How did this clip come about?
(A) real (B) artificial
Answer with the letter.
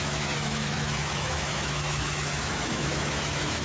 B